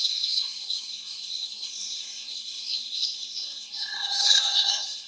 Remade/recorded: remade